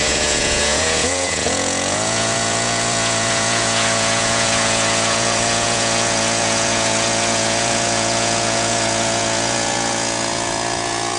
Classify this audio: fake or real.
fake